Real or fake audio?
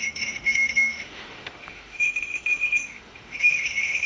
fake